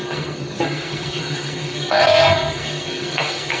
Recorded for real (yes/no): no